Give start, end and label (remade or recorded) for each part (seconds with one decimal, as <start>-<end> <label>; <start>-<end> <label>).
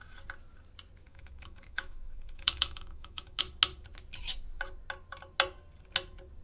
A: 0.0-1.1 recorded; 1.1-3.4 remade; 3.4-6.4 recorded